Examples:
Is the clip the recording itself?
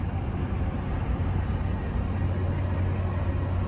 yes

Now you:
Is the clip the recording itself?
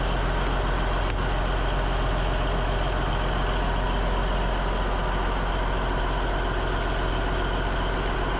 yes